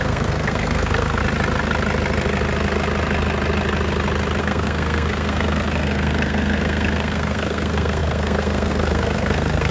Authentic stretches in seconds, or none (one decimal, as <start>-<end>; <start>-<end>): 1.2-4.4